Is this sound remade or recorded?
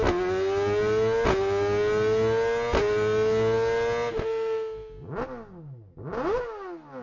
recorded